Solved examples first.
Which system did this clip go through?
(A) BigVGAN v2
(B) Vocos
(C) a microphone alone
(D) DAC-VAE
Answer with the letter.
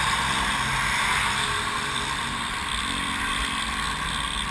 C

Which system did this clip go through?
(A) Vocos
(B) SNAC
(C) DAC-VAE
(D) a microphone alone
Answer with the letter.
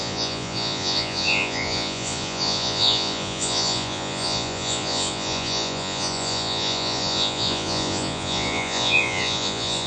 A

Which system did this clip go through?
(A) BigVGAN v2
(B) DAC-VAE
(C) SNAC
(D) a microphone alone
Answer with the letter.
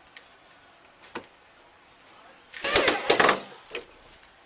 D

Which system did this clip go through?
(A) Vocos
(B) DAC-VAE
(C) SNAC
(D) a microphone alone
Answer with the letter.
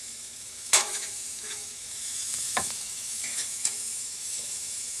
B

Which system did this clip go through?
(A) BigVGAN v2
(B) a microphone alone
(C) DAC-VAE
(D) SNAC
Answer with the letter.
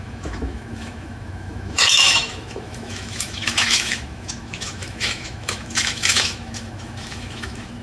C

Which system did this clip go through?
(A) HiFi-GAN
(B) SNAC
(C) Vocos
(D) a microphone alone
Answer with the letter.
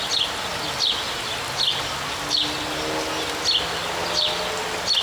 D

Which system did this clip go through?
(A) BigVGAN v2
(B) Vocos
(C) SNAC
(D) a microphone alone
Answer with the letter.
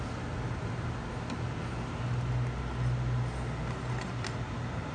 D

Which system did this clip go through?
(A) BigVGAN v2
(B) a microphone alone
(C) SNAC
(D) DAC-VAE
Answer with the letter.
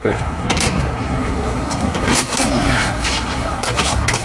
C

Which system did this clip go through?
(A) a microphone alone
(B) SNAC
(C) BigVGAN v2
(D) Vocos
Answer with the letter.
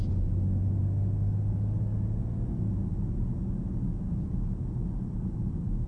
A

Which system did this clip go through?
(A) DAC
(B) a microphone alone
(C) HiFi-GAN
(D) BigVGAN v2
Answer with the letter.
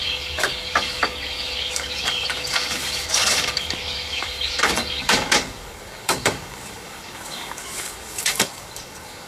A